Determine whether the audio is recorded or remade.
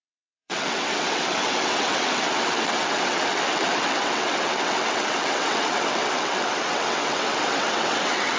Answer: remade